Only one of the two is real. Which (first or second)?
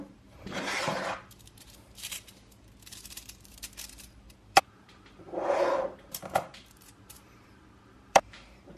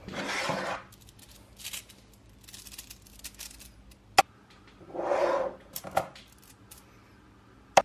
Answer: second